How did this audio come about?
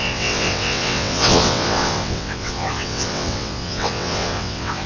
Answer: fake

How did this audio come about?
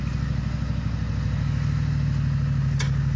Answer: real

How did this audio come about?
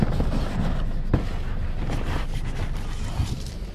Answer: real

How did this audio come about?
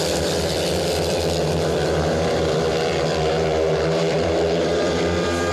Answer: fake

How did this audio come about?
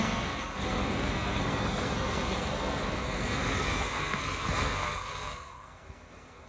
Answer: fake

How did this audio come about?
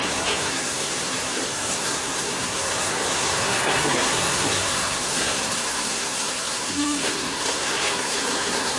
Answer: fake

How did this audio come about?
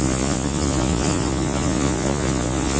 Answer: fake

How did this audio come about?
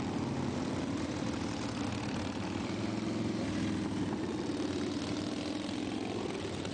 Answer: real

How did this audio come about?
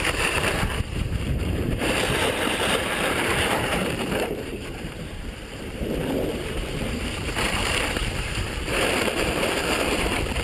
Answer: fake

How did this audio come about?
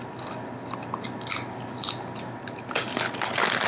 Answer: real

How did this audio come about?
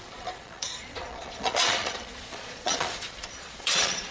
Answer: fake